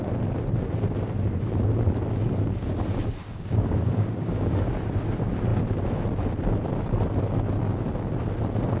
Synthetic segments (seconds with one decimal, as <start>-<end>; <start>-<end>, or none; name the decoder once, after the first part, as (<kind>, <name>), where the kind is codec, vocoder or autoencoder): 3.2-4.7 (codec, DAC)